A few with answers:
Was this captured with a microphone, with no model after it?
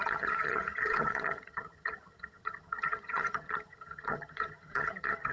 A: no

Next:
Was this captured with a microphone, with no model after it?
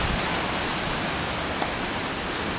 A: yes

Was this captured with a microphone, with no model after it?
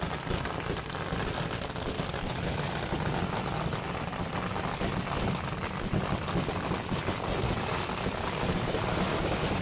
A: yes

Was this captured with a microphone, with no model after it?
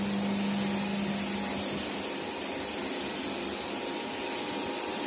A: yes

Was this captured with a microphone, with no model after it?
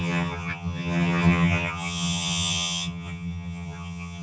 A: no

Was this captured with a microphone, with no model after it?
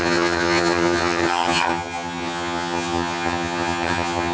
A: no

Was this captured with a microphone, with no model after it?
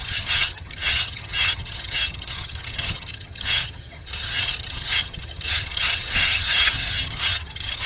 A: no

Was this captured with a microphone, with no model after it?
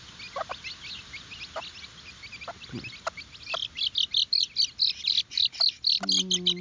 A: yes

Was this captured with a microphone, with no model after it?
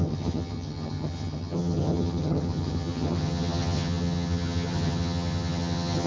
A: no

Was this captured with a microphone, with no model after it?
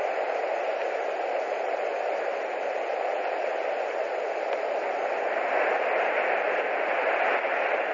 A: yes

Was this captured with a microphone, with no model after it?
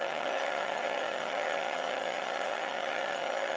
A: no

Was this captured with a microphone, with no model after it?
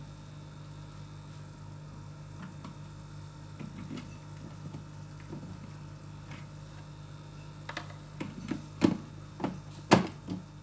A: yes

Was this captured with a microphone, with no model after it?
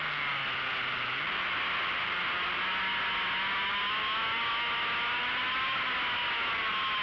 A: yes